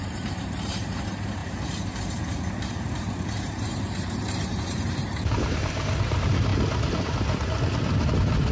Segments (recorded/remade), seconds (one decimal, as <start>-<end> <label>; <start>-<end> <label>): 0.0-6.5 remade; 6.5-8.5 recorded